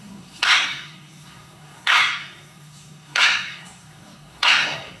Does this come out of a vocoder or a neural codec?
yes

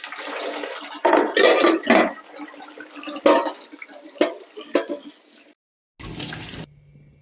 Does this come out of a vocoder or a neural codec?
no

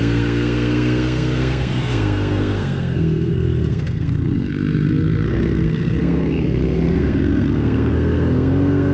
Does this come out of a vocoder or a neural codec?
yes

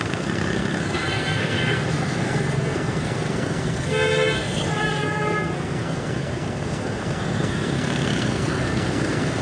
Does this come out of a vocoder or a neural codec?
yes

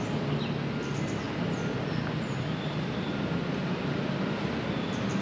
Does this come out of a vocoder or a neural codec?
no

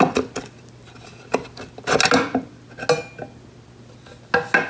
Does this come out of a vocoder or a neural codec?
no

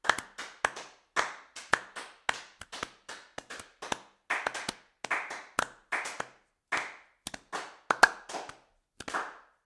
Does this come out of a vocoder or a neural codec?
no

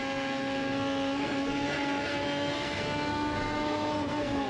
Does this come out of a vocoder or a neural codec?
yes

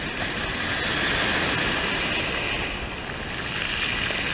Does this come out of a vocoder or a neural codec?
no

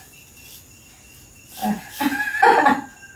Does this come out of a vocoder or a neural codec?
no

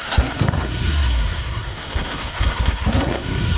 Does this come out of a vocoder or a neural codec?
yes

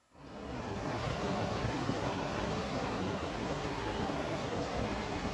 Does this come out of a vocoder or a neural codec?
yes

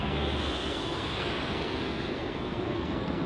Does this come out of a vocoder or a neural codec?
yes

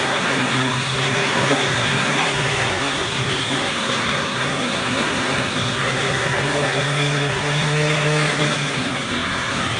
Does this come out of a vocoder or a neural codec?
yes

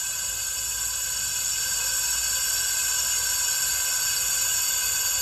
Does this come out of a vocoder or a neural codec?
no